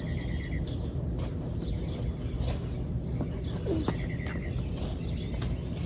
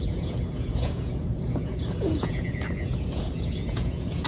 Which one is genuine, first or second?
first